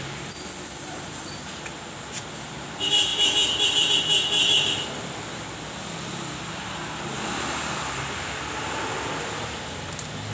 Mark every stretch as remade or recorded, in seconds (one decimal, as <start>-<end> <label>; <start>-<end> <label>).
0.0-10.3 recorded